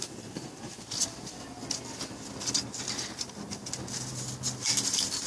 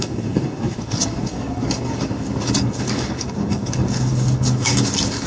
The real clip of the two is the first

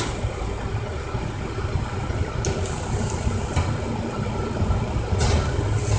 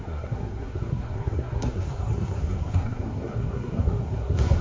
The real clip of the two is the first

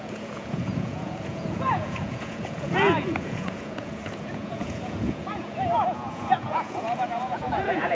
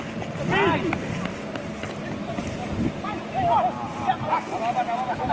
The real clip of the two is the second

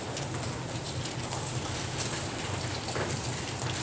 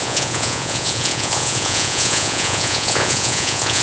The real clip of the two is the first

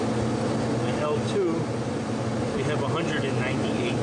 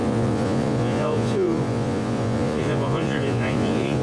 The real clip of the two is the first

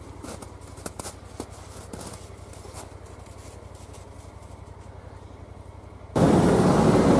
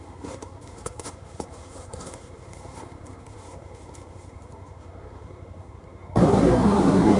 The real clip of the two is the first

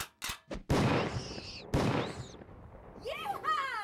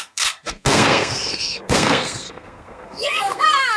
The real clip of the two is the first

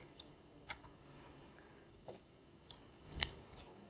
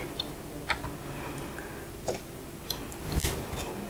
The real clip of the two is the second